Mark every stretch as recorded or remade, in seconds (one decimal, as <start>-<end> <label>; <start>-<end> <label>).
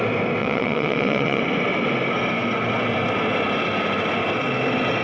0.0-0.4 recorded; 0.4-1.4 remade; 1.4-5.0 recorded